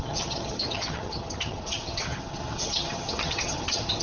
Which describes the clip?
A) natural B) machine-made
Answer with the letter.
B